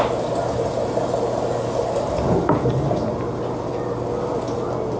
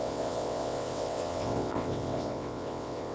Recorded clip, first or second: first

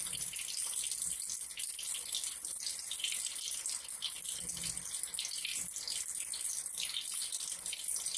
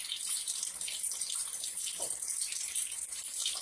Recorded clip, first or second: first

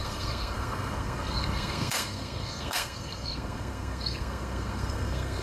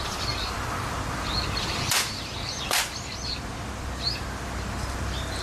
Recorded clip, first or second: second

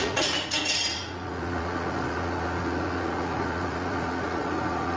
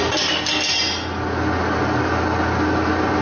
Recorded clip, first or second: second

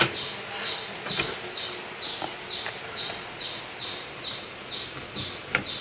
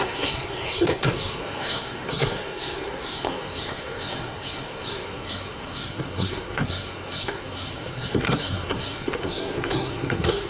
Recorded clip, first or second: first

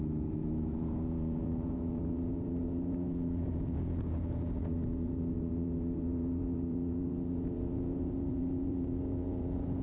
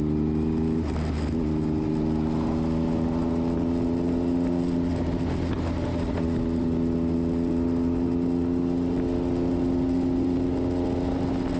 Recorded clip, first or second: second